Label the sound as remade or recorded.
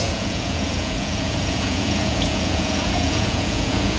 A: remade